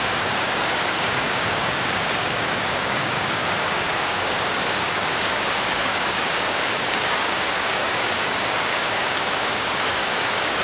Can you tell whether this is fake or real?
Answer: fake